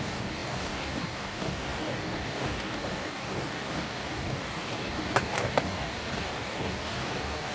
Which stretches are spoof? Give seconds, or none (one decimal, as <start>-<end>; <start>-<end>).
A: 0.0-7.5

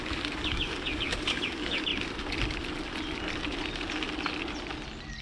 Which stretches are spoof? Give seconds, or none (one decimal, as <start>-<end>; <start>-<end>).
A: 0.0-1.9

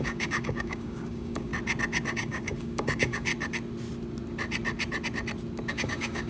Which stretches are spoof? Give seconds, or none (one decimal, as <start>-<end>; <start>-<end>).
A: 0.0-1.5; 2.1-3.3; 5.7-6.3

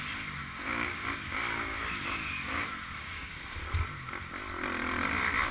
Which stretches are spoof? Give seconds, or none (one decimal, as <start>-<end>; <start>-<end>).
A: 0.4-3.7

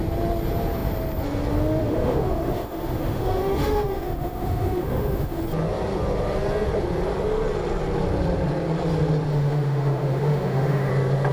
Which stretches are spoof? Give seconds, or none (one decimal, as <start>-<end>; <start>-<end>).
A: 1.8-5.4; 9.3-10.9

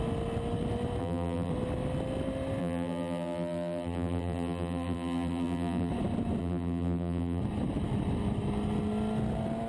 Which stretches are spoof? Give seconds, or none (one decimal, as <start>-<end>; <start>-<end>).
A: 1.0-1.5; 2.6-5.9; 6.4-7.4